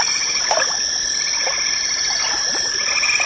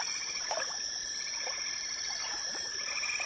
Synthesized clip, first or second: second